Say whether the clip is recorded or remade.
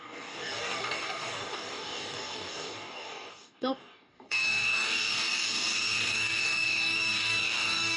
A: remade